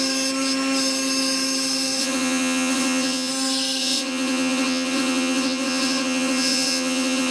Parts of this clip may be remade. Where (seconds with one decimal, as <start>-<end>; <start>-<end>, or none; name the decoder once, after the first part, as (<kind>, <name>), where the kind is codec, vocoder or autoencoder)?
2.0-3.3 (vocoder, WaveNeXt); 3.8-7.3

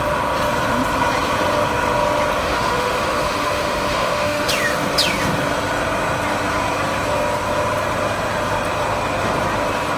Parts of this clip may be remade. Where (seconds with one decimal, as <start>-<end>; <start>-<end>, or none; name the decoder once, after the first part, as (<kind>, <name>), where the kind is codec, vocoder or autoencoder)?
2.4-4.5 (autoencoder, DAC-VAE)